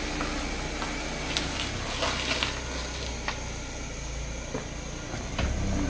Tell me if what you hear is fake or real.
real